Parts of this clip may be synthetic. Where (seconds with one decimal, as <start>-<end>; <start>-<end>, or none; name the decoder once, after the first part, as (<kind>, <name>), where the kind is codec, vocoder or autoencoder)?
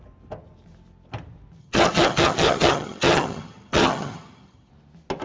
1.6-4.7 (vocoder, HiFi-GAN)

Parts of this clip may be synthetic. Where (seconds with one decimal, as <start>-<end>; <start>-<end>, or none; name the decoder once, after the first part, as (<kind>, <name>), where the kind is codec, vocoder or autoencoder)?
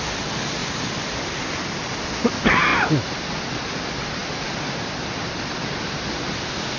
none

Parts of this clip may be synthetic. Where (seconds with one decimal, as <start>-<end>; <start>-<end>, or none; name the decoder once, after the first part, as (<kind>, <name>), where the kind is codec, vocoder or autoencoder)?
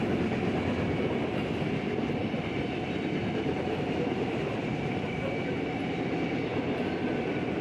none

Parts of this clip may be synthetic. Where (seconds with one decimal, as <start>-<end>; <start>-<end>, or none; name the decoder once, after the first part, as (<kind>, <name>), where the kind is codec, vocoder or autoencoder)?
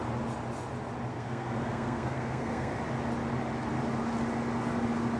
1.1-2.7 (codec, SNAC)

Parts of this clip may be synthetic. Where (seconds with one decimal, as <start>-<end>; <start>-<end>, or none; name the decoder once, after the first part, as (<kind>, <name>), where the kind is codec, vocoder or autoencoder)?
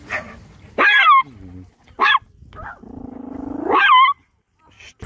none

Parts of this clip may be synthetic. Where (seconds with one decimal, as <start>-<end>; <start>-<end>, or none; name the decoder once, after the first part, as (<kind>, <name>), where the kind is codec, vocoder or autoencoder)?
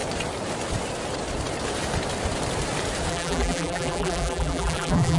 3.1-5.2 (vocoder, BigVGAN v2)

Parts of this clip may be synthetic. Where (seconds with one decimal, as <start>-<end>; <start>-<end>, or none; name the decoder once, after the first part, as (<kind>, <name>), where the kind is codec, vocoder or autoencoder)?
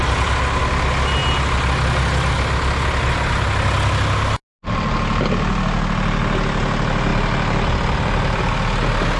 none